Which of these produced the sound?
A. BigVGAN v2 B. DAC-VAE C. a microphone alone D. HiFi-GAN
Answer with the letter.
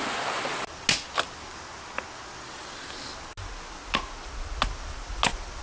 C